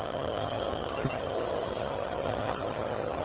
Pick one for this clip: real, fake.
fake